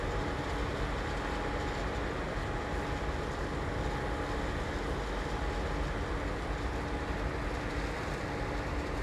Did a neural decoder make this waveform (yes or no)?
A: no